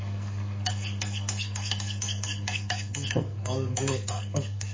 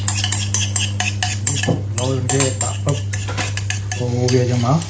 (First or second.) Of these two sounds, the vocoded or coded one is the first